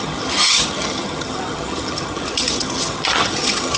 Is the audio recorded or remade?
remade